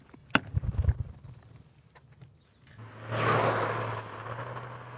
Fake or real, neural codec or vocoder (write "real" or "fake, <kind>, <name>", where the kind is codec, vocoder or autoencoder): real